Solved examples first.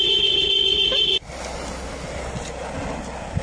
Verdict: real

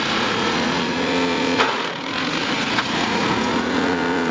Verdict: fake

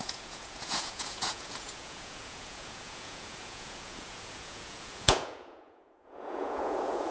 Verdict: fake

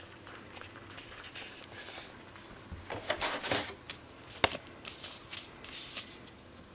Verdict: real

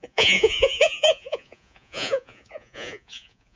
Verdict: fake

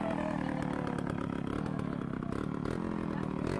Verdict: real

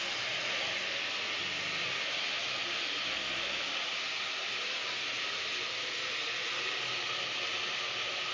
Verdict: real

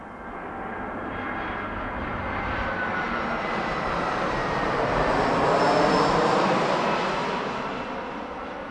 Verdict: real